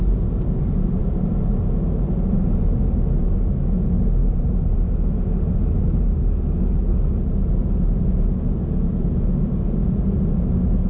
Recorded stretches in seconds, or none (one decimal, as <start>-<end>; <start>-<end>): 0.0-10.9